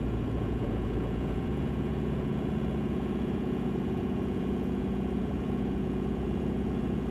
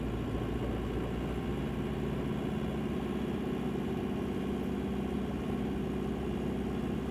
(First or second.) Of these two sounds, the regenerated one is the first